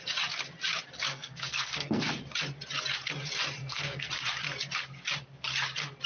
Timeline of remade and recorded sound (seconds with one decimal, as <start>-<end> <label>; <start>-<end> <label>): 0.0-1.1 recorded; 1.1-2.2 remade; 2.2-3.6 recorded; 3.6-4.1 remade; 4.1-6.1 recorded